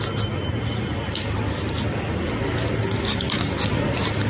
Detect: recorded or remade recorded